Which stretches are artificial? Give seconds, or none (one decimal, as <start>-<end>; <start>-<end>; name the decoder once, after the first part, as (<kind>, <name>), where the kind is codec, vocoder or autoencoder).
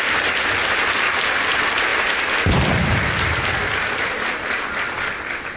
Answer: none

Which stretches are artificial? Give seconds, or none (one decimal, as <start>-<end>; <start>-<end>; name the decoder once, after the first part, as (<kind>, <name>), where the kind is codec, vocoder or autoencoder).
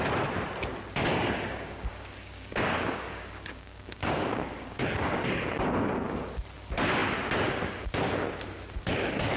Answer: 1.1-5.2 (codec, DAC)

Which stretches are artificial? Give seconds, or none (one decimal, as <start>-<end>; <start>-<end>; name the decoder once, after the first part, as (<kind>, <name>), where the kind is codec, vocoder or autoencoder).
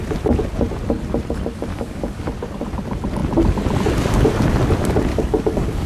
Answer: 1.7-2.3 (codec, DAC); 5.1-5.9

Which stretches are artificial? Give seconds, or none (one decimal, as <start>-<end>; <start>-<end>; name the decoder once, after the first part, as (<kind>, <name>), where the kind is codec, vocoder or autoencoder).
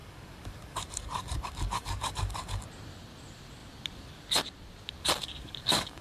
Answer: 0.0-2.6 (codec, DAC); 5.2-6.0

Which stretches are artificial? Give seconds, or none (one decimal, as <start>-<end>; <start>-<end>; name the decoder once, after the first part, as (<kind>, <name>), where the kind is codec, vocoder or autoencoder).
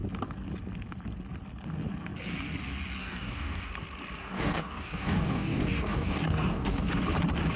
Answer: 3.0-3.7 (codec, DAC); 4.2-6.9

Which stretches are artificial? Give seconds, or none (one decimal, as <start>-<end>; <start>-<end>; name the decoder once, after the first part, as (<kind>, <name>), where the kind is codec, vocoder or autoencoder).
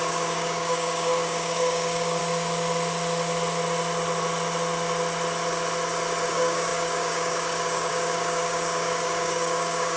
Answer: 0.0-2.2 (codec, DAC); 6.3-10.0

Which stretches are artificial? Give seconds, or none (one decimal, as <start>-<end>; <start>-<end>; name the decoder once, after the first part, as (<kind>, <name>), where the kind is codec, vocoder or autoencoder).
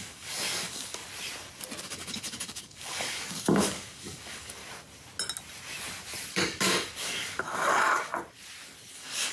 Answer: 0.0-1.0 (codec, DAC); 1.8-4.6; 6.3-8.1; 8.9-9.3